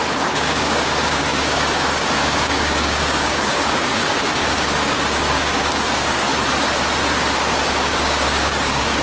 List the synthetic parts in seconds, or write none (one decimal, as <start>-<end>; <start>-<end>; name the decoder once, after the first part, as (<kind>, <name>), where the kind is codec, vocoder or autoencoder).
0.0-6.3 (codec, DAC); 7.7-9.0

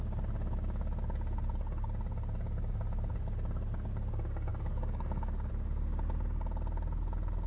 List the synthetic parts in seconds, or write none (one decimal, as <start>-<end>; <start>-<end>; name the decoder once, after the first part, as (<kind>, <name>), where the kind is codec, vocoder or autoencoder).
4.5-5.5 (codec, DAC)

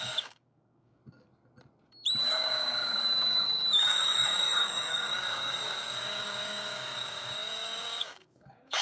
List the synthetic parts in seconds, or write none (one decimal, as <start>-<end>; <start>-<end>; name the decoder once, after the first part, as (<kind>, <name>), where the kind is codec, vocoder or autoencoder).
0.0-1.0 (codec, DAC); 2.2-8.8

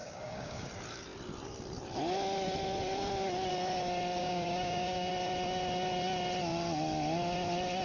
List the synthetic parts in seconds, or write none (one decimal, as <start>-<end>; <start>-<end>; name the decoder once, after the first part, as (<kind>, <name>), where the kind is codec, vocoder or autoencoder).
0.0-0.7 (codec, DAC); 4.2-5.1

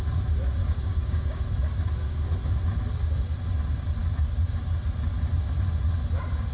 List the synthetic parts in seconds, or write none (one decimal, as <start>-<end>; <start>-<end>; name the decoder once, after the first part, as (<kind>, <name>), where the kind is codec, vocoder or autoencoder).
0.6-1.4 (codec, DAC)

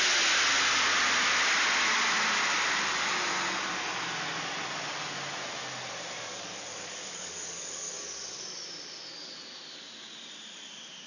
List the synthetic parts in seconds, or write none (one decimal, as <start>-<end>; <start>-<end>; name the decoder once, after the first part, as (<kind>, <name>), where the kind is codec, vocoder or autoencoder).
6.3-9.3 (codec, DAC)

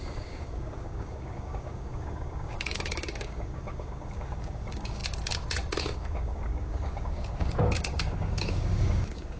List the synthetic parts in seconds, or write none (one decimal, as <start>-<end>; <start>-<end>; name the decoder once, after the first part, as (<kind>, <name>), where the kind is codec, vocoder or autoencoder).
0.0-5.0 (codec, DAC); 5.8-9.4

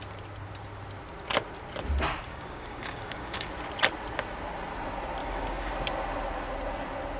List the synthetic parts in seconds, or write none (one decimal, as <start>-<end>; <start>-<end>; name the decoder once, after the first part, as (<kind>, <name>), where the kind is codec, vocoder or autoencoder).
2.3-3.5 (codec, DAC); 5.2-5.7